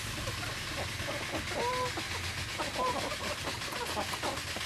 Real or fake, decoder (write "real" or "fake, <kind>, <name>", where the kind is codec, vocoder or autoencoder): real